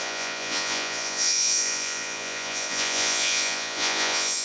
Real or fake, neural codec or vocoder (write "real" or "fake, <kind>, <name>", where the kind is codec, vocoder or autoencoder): fake, vocoder, Vocos